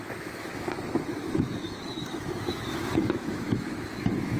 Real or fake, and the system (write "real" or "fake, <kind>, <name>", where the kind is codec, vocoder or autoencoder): fake, autoencoder, DAC-VAE